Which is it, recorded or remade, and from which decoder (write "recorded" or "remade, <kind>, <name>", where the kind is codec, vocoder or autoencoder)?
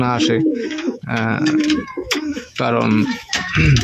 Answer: remade, autoencoder, DAC-VAE